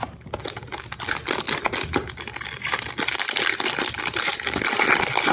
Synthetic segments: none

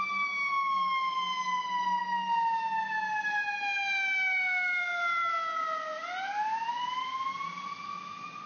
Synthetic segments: none

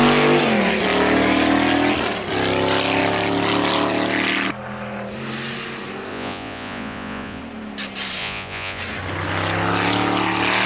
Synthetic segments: 6.1-7.4 (vocoder, Vocos); 8.2-8.8

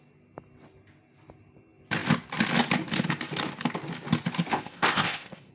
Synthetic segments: 4.5-5.5 (codec, ZipCodec)

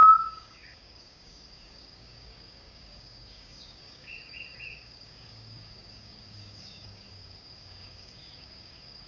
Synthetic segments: 0.0-9.1 (codec, DAC)